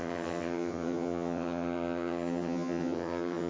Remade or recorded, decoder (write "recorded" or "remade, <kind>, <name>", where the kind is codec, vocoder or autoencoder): remade, vocoder, HiFi-GAN